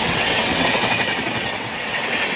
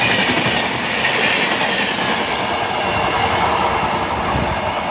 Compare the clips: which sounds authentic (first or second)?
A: second